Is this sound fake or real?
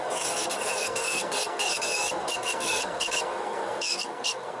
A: fake